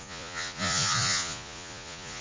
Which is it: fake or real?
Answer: fake